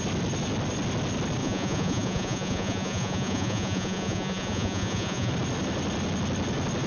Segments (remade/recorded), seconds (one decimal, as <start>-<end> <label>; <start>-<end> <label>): 0.0-1.4 recorded; 1.4-5.3 remade; 5.3-6.9 recorded